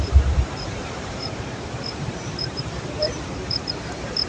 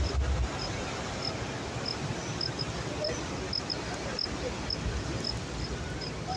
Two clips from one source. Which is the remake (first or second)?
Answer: first